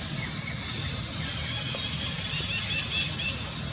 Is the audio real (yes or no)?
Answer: yes